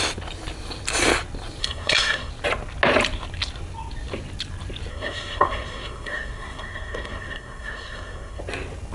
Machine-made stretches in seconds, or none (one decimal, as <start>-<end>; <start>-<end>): 1.6-2.3; 4.9-8.4